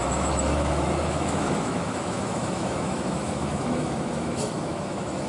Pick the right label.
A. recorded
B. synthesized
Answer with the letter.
B